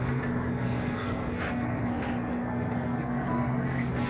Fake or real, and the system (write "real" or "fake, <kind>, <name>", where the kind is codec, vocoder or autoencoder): fake, codec, SNAC